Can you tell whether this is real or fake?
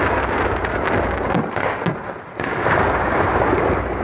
real